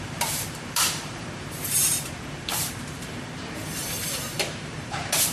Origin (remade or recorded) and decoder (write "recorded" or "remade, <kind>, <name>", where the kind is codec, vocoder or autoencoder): remade, vocoder, BigVGAN v2